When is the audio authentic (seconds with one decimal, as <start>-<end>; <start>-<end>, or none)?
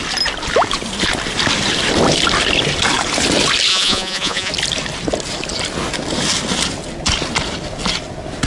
0.0-3.7; 4.5-8.5